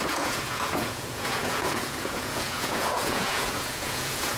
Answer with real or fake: fake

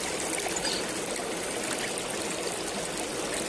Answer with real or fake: real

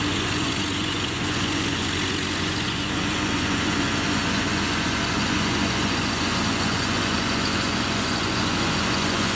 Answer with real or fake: fake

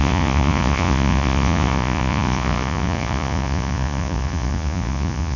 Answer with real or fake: fake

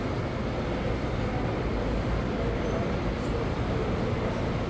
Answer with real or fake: real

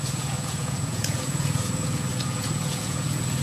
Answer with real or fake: fake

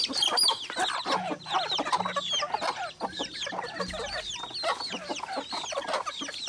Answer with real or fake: real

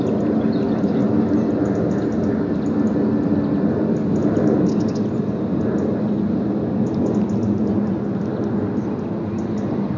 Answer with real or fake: real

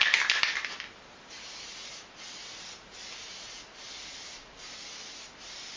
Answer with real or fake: real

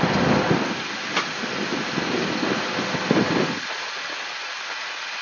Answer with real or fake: real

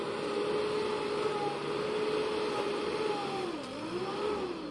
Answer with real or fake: real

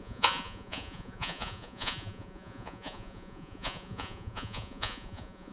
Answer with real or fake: fake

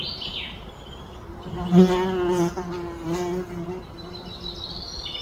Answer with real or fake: real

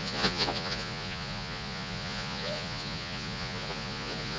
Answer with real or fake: fake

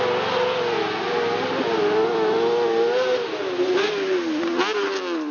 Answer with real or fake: real